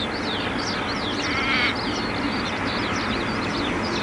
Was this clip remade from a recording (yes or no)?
no